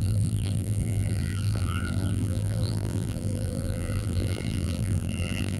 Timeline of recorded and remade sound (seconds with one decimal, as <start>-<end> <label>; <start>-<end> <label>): 0.0-5.6 remade